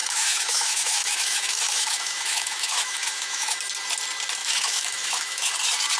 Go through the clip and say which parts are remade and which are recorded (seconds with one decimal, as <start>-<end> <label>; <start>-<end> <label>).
0.0-3.6 remade; 3.6-4.4 recorded; 4.4-5.5 remade; 5.5-6.0 recorded

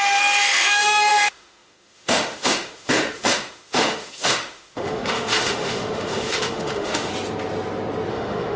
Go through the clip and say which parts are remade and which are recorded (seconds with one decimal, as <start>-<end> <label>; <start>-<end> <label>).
0.0-7.1 remade; 7.1-8.1 recorded; 8.1-8.6 remade

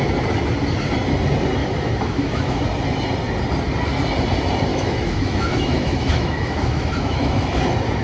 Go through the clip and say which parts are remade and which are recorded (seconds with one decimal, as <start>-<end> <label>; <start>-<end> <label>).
0.0-1.6 recorded; 1.6-2.6 remade; 2.6-4.7 recorded; 4.7-7.6 remade; 7.6-8.0 recorded

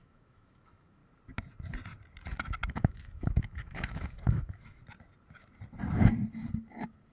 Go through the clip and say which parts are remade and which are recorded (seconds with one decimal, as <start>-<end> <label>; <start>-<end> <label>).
0.0-1.0 remade; 1.0-2.7 recorded; 2.7-4.8 remade; 4.8-7.1 recorded

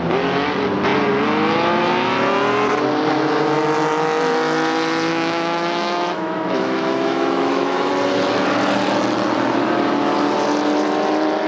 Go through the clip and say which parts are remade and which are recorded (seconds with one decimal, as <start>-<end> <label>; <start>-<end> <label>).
0.0-5.1 recorded; 5.1-7.9 remade; 7.9-11.5 recorded

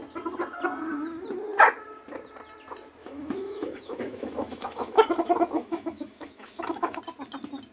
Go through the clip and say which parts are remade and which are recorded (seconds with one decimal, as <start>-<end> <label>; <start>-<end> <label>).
0.0-3.0 recorded; 3.0-7.0 remade; 7.0-7.7 recorded